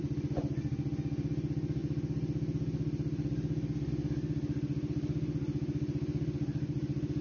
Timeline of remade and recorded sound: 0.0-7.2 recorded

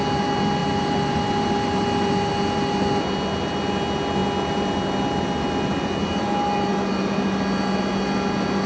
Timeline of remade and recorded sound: 0.0-0.6 recorded; 0.6-2.3 remade; 2.3-8.7 recorded

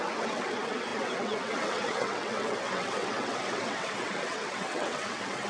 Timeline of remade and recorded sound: 0.0-5.5 remade

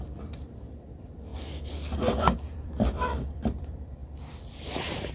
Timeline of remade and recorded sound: 0.0-1.3 remade; 1.3-2.4 recorded; 2.4-5.1 remade

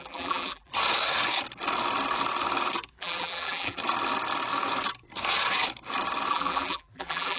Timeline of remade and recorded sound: 0.0-0.7 remade; 0.7-2.9 recorded; 2.9-3.8 remade; 3.8-6.3 recorded; 6.3-7.4 remade

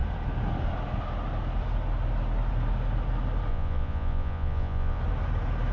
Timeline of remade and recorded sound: 0.0-3.5 recorded; 3.5-5.0 remade; 5.0-5.7 recorded

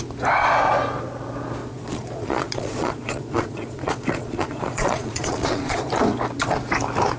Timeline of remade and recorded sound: 0.0-1.6 recorded; 1.6-5.9 remade; 5.9-7.2 recorded